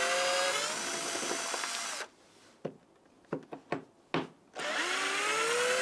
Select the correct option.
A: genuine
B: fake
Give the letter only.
A